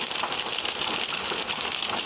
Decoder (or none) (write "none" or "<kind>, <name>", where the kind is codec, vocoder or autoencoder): none